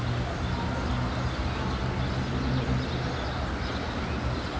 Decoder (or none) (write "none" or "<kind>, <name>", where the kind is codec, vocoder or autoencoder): none